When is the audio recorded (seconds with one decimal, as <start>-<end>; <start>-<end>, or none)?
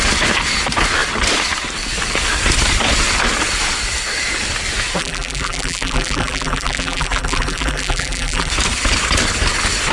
0.0-5.0; 8.5-9.9